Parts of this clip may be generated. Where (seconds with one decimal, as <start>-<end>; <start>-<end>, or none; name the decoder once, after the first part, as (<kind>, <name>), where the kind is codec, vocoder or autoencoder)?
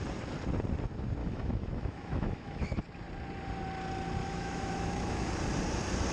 1.2-2.8 (autoencoder, DAC-VAE); 4.2-5.3